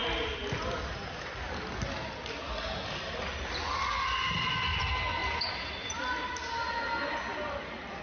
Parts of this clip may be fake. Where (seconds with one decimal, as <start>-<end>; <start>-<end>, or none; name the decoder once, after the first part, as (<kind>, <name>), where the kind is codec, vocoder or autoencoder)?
none